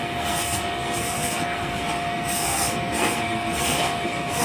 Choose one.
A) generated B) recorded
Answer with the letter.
A